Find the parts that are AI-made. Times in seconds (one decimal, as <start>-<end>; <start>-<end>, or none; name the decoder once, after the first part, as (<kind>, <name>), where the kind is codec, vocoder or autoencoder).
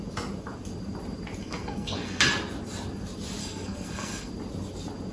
1.4-2.2 (codec, SNAC); 3.4-4.3